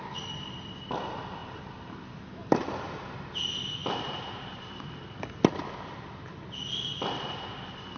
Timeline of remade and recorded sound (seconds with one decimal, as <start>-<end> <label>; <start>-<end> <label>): 0.0-2.4 recorded; 2.4-3.1 remade; 3.1-3.8 recorded; 3.8-5.2 remade; 5.2-8.0 recorded